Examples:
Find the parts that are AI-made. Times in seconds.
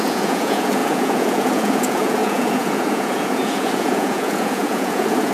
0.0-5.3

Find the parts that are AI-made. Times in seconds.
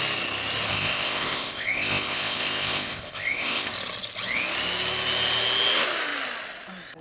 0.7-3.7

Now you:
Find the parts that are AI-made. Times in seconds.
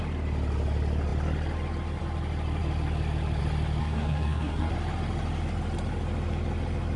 3.8-4.7